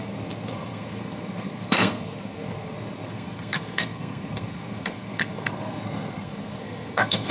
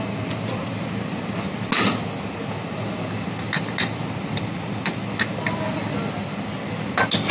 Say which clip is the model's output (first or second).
first